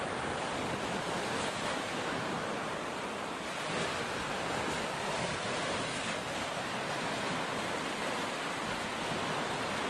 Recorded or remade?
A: recorded